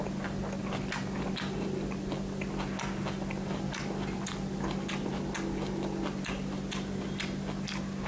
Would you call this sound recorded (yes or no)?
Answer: yes